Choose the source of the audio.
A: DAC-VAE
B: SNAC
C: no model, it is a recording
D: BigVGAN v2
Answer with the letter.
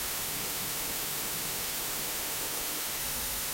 A